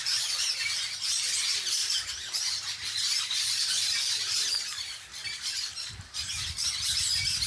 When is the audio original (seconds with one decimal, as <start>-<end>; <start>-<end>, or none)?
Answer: 0.0-5.2; 6.9-7.5